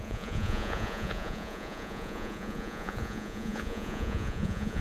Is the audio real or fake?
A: fake